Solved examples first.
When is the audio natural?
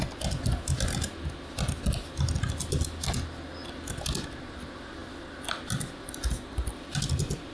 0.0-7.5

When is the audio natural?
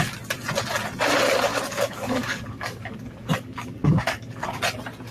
0.0-1.5; 4.6-5.1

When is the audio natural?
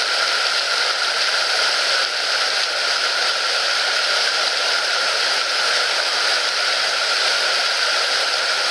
0.0-2.0; 7.1-8.7